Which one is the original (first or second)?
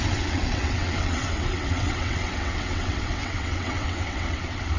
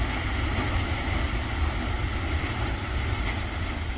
second